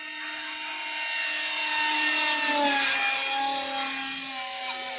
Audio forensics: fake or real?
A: real